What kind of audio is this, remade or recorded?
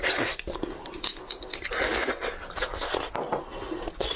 recorded